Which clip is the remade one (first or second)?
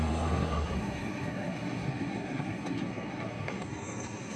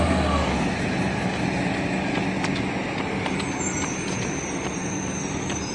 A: first